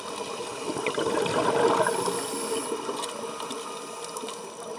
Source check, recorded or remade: recorded